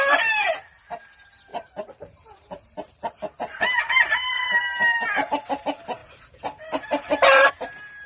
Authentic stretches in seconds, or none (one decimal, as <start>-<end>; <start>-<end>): 0.0-1.5; 4.5-6.0; 7.5-8.1

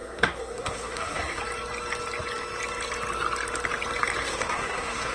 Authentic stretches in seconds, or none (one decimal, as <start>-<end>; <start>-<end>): 1.4-4.2

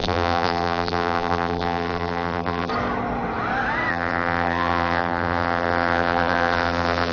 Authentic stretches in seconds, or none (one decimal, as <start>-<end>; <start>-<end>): 2.7-3.9